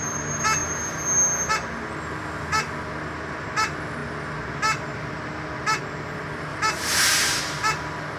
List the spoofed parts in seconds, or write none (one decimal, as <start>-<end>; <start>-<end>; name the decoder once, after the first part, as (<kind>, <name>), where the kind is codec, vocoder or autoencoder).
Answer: 6.5-7.4 (vocoder, BigVGAN v2)